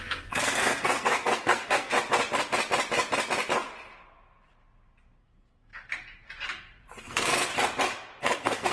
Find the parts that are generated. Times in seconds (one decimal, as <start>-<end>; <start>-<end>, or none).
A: 0.0-1.9; 5.2-5.7; 7.0-7.5; 8.2-8.7